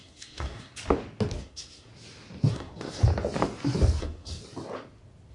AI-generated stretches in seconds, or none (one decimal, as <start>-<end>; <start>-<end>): 0.0-0.8; 1.4-1.9; 2.5-3.0; 4.0-4.4

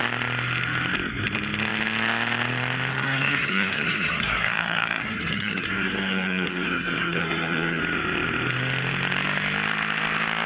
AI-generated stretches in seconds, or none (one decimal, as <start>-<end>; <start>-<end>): 2.9-7.8

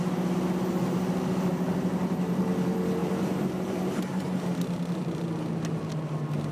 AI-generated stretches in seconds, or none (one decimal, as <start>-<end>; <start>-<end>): 1.5-2.4; 3.0-5.3

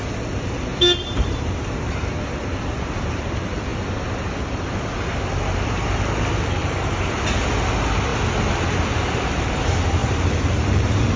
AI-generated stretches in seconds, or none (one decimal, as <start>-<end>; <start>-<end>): 0.7-1.4; 10.0-11.2

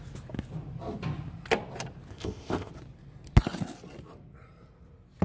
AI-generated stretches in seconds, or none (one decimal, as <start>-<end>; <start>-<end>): 2.1-2.7